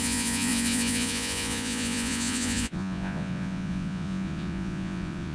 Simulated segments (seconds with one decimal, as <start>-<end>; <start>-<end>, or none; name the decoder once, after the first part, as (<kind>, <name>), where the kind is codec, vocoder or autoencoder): 0.0-5.3 (vocoder, Vocos)